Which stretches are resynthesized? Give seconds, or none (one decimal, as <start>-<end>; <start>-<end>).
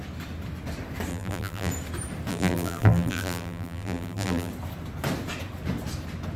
1.1-1.7; 2.3-4.5